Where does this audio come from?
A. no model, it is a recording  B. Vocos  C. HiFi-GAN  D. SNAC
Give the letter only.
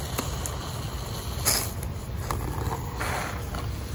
A